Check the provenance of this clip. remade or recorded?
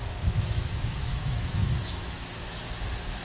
remade